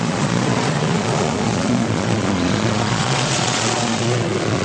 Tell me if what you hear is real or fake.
fake